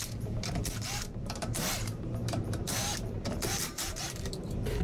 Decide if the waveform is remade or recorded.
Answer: remade